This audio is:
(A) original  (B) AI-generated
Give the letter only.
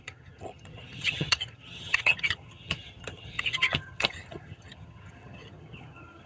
B